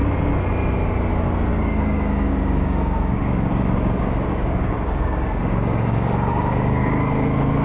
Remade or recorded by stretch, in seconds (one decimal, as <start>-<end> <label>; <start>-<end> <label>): 0.0-1.5 recorded; 1.5-7.6 remade